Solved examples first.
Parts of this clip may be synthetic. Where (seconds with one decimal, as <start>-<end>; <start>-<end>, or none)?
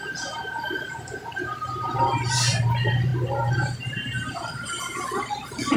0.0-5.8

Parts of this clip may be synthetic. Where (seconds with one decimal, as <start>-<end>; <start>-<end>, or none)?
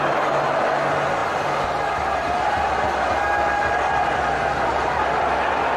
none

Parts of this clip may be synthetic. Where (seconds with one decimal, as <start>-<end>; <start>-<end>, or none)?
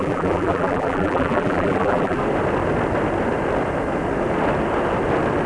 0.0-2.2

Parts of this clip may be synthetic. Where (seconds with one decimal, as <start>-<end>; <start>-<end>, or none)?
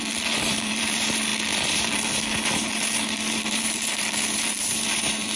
0.0-5.4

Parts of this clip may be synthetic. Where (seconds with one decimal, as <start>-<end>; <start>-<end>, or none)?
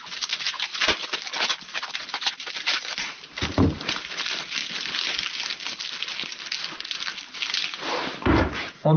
0.0-0.7; 1.9-4.6; 7.1-9.0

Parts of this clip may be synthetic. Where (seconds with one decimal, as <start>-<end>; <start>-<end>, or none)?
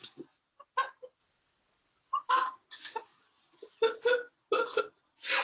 1.2-2.3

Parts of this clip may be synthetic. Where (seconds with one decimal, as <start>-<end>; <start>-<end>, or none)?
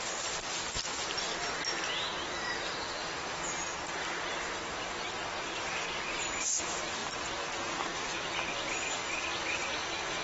none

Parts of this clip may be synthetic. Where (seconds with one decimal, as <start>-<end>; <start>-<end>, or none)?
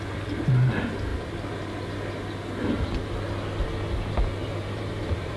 4.4-5.4